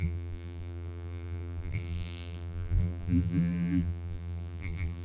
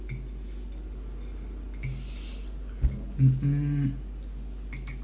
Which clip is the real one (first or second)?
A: second